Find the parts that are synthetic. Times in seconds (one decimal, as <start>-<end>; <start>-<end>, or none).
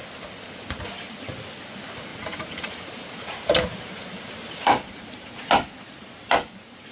2.1-5.3